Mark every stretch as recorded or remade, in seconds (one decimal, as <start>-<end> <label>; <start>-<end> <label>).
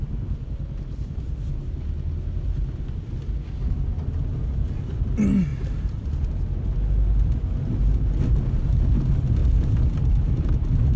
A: 0.0-5.5 recorded; 5.5-6.4 remade; 6.4-9.4 recorded; 9.4-11.0 remade